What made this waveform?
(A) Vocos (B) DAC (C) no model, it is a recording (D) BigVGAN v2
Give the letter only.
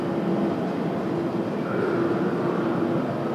C